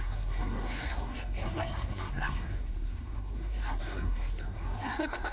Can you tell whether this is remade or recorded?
remade